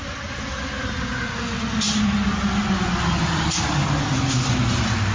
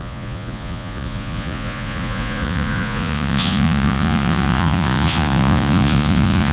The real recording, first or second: first